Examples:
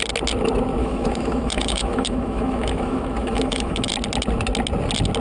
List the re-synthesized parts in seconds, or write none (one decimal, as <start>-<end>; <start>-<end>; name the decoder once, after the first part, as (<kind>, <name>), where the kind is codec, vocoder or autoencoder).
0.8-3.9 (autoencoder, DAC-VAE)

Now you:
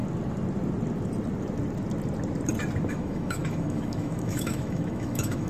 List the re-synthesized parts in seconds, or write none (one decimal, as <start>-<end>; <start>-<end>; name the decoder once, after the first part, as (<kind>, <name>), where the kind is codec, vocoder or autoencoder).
2.9-5.5 (autoencoder, DAC-VAE)

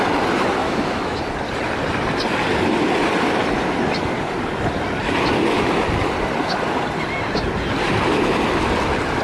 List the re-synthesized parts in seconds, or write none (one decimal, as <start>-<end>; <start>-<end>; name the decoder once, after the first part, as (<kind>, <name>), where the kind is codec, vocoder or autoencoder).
0.6-1.2 (autoencoder, DAC-VAE)

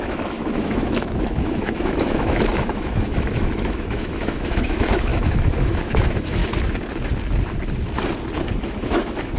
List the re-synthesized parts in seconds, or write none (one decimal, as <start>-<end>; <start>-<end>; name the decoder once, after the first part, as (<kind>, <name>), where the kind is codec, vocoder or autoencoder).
0.0-6.4 (autoencoder, DAC-VAE); 8.8-9.4

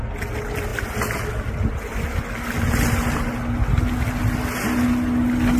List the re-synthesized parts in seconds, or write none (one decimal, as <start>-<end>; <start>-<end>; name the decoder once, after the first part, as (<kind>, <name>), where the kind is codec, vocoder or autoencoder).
none

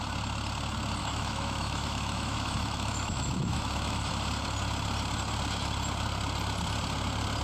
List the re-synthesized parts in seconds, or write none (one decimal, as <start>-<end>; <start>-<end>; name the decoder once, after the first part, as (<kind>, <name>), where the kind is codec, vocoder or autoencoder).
1.0-4.1 (autoencoder, DAC-VAE)

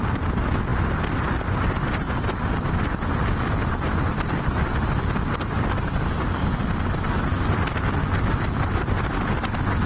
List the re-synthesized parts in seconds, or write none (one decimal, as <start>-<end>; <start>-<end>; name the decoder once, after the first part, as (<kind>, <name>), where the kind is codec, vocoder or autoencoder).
none

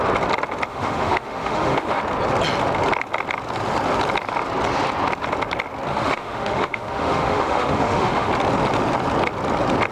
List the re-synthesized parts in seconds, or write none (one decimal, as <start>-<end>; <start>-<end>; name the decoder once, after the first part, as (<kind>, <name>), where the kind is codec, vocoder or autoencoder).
0.7-2.0 (autoencoder, DAC-VAE); 5.9-8.3